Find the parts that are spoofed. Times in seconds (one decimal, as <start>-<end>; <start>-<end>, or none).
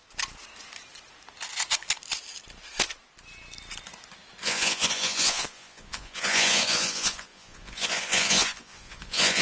4.4-9.4